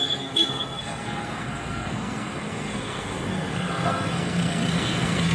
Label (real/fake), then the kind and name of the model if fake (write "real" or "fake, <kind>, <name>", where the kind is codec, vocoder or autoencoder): fake, codec, SNAC